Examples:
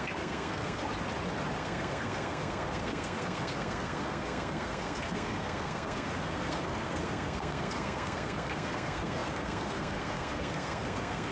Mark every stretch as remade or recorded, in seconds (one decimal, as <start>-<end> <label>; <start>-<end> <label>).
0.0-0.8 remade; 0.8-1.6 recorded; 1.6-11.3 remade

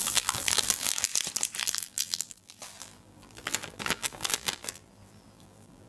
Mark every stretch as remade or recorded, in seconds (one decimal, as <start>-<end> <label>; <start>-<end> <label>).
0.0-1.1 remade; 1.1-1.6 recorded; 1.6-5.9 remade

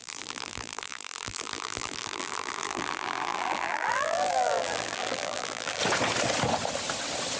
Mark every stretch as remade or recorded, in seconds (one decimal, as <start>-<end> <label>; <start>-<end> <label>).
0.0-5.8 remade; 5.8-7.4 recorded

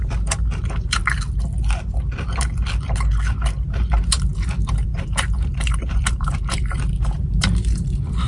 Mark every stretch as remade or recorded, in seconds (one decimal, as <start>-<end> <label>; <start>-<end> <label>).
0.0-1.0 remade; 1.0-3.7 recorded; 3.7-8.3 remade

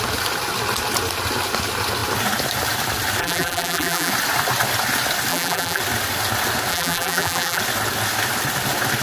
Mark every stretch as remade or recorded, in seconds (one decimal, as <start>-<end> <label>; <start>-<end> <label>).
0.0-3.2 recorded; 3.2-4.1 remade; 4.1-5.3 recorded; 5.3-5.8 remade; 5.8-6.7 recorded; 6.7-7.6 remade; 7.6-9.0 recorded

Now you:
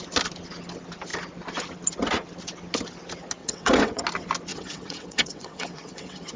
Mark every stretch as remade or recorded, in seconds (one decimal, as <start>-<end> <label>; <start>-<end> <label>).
0.0-3.4 recorded; 3.4-4.0 remade; 4.0-4.5 recorded; 4.5-6.4 remade

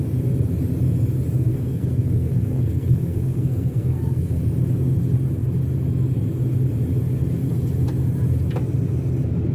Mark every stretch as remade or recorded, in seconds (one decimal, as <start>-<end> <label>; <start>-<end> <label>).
0.0-1.5 recorded; 1.5-4.4 remade; 4.4-9.5 recorded

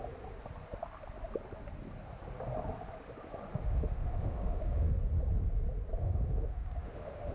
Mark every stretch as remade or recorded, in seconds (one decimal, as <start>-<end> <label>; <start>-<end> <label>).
0.0-3.5 recorded; 3.5-5.0 remade; 5.0-6.0 recorded; 6.0-7.3 remade